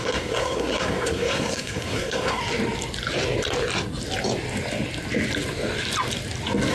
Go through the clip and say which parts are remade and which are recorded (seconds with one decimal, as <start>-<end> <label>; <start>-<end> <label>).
0.0-2.4 remade; 2.4-6.7 recorded

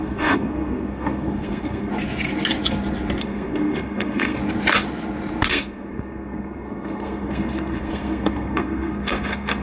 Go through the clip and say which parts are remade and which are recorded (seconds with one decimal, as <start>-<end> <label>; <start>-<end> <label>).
0.0-1.9 remade; 1.9-3.2 recorded; 3.2-4.4 remade; 4.4-5.5 recorded; 5.5-9.6 remade

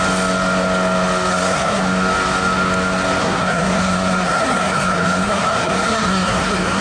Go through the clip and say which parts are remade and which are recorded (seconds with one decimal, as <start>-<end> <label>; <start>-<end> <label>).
0.0-1.3 recorded; 1.3-1.8 remade; 1.8-3.2 recorded; 3.2-6.8 remade

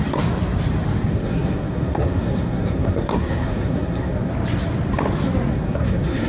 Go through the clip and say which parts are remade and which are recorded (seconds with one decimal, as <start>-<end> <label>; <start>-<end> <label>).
0.0-1.1 recorded; 1.1-4.3 remade; 4.3-5.5 recorded; 5.5-6.3 remade

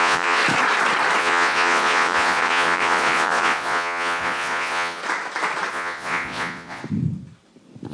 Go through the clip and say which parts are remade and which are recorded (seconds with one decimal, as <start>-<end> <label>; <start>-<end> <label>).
0.0-0.4 remade; 0.4-1.2 recorded; 1.2-5.0 remade; 5.0-5.7 recorded; 5.7-6.8 remade; 6.8-7.9 recorded

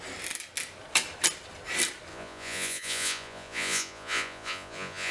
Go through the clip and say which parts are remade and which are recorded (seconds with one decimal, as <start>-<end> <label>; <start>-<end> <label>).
0.0-2.1 recorded; 2.1-5.1 remade

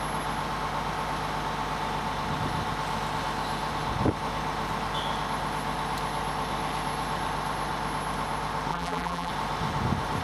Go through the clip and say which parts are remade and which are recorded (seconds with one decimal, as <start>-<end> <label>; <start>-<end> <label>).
0.0-8.7 recorded; 8.7-9.3 remade; 9.3-10.2 recorded

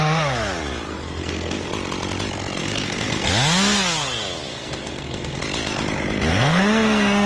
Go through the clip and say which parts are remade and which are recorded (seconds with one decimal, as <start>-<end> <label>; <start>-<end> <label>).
0.0-0.9 recorded; 0.9-1.7 remade; 1.7-2.6 recorded; 2.6-3.3 remade; 3.3-4.5 recorded; 4.5-5.4 remade; 5.4-6.3 recorded; 6.3-7.3 remade